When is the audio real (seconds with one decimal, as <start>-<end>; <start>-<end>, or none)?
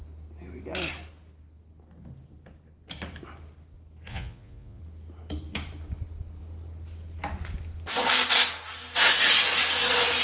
0.0-4.1; 4.8-10.2